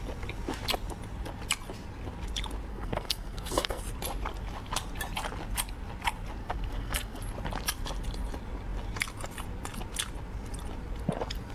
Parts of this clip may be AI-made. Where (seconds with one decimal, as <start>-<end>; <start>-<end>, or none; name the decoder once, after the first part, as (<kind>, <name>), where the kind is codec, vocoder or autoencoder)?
2.7-3.8 (codec, SNAC); 6.4-7.2